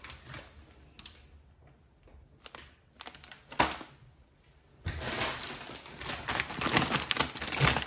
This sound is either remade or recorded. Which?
recorded